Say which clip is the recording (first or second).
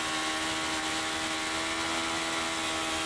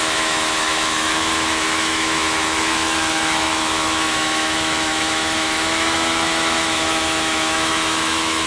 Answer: first